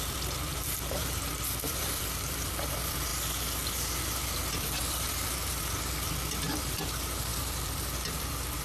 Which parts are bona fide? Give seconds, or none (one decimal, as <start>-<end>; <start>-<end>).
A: 3.1-4.8